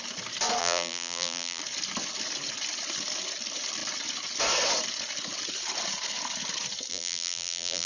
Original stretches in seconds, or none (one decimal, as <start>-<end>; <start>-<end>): 0.0-0.6; 1.6-6.9